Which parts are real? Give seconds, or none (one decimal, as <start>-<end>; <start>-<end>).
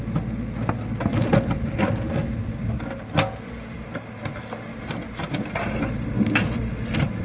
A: 0.0-7.2